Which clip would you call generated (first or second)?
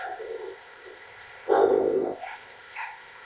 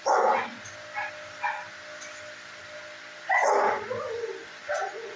first